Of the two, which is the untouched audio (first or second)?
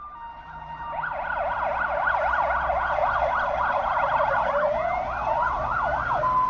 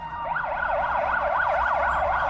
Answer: first